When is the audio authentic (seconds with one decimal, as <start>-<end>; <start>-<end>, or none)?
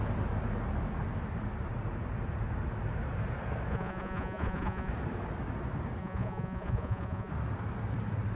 0.0-3.7; 4.9-6.0; 7.3-8.3